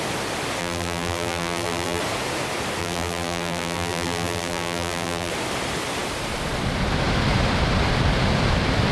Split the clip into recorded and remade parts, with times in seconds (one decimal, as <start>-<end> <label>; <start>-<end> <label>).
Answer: 0.0-0.6 recorded; 0.6-2.0 remade; 2.0-2.8 recorded; 2.8-5.3 remade; 5.3-8.9 recorded

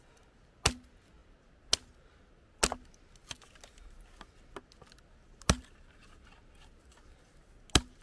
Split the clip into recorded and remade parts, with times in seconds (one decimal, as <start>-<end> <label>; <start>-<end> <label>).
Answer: 0.0-8.0 recorded

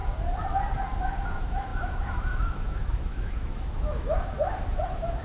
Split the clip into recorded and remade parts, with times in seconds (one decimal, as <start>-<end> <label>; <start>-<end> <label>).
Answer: 0.0-1.0 recorded; 1.0-5.2 remade